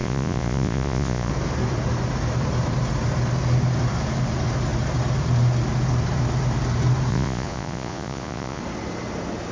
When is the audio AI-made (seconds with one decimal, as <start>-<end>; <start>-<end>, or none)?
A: 0.0-1.3; 7.1-8.6